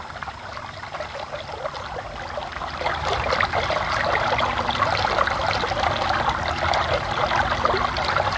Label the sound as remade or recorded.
recorded